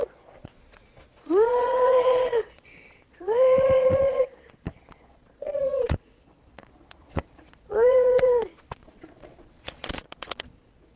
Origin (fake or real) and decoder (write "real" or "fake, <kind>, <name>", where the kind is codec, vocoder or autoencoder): fake, vocoder, Vocos